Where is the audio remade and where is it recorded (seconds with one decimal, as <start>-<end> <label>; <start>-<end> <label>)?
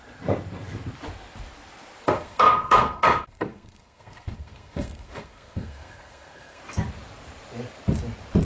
0.0-2.1 recorded; 2.1-6.6 remade; 6.6-8.4 recorded